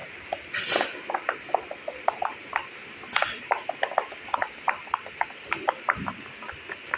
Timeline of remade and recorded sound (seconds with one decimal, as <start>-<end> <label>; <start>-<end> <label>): 0.0-7.0 recorded